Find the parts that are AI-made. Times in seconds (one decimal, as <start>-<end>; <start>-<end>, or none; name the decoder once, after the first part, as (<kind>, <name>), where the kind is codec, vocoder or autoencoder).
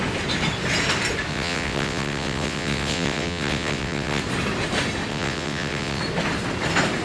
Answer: 1.3-4.2 (vocoder, WaveNeXt); 5.1-6.0